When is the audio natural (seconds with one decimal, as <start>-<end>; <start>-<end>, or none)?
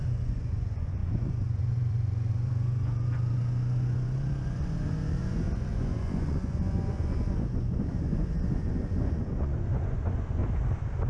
10.4-11.1